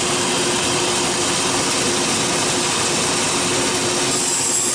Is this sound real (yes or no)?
yes